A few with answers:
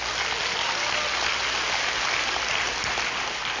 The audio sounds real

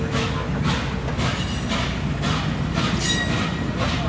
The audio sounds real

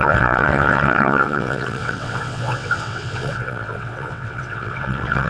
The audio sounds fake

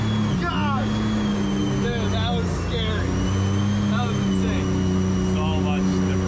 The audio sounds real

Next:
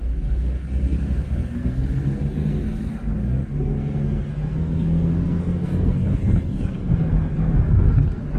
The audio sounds fake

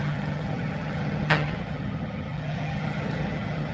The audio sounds fake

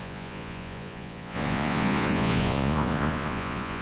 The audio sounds fake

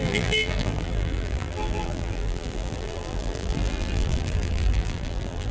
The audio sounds fake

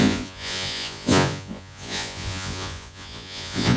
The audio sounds fake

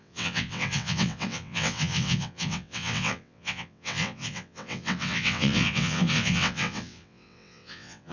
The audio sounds fake